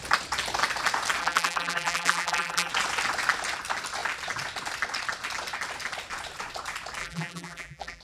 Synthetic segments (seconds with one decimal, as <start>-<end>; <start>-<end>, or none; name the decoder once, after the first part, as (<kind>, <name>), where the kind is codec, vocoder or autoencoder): 1.2-2.7 (vocoder, BigVGAN v2); 7.0-8.0